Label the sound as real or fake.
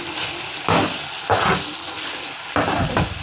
real